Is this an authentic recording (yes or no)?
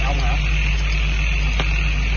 yes